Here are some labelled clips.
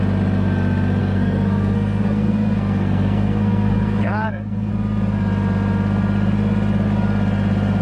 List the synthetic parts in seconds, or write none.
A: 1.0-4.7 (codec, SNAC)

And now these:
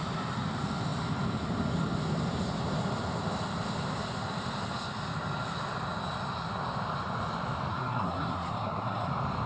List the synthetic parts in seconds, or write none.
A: 7.7-9.1 (codec, SNAC)

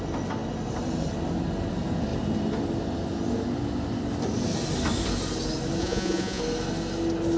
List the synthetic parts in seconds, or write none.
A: 5.8-6.4 (vocoder, Vocos)

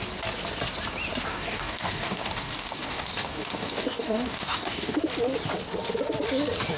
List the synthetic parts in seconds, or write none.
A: 1.3-5.0 (codec, DAC)

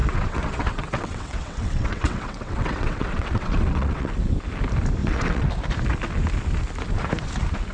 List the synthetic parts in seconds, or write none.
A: 0.0-4.1 (vocoder, WaveNeXt); 5.0-5.5